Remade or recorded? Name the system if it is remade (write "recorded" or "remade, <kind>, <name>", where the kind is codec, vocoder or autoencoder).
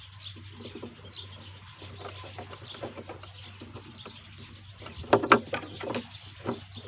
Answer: recorded